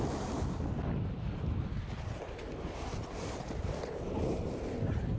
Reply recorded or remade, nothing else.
recorded